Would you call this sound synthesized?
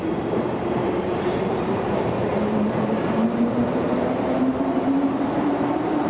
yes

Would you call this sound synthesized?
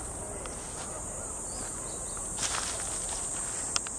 no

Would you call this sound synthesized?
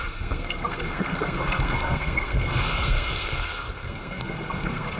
yes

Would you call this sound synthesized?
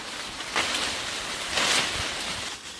no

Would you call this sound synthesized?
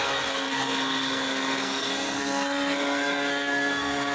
yes